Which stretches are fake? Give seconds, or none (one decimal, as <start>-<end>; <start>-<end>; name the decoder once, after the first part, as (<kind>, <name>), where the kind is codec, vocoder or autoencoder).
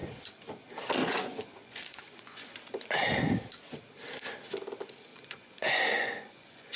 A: 1.0-2.5 (vocoder, Vocos); 5.1-6.8